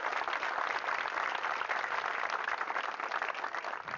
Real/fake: real